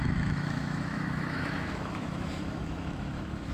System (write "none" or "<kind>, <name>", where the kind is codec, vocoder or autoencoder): autoencoder, DAC-VAE